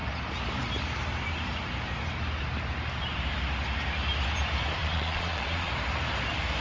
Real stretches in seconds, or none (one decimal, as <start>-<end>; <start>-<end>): 0.0-4.8; 5.7-6.6